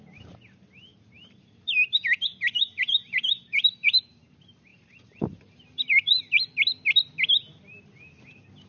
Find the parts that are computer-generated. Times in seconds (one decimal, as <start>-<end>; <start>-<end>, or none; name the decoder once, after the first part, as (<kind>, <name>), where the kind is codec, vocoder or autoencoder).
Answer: 0.9-4.1 (vocoder, BigVGAN v2); 4.7-6.4